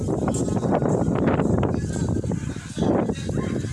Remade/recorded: recorded